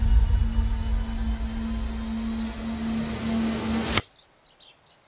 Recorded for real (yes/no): yes